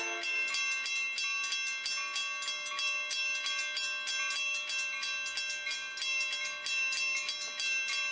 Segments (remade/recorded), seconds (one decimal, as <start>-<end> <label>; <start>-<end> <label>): 0.0-8.1 recorded